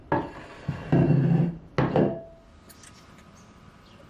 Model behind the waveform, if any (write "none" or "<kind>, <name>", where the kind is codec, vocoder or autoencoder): none